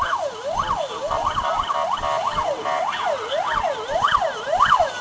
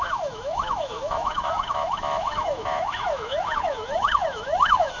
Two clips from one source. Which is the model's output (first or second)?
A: second